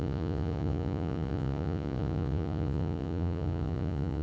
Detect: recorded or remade remade